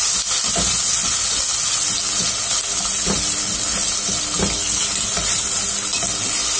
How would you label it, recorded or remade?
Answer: recorded